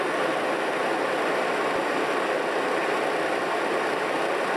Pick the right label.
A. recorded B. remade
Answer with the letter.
A